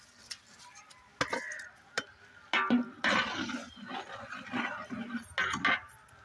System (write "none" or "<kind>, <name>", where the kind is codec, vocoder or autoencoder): none